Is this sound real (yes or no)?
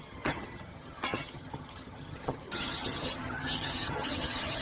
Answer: no